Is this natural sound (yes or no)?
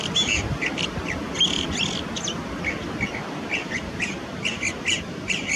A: yes